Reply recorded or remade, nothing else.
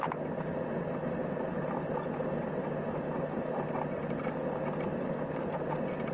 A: recorded